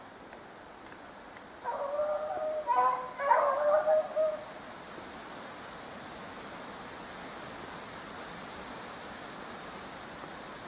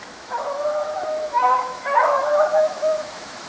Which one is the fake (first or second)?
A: second